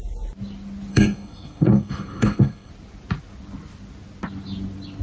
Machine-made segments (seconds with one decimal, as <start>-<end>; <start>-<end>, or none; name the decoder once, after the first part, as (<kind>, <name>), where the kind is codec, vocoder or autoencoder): 0.9-2.7 (codec, SNAC)